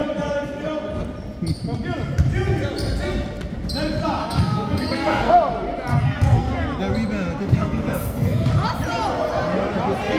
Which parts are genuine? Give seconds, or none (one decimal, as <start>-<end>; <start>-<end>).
0.0-4.2; 5.3-5.9; 6.5-7.4; 8.5-10.2